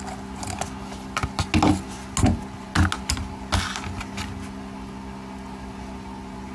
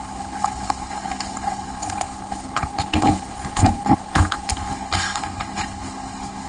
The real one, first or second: first